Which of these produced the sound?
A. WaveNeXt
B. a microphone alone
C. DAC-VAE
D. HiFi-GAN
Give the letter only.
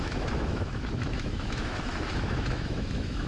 C